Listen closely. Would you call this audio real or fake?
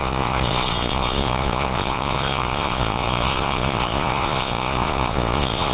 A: fake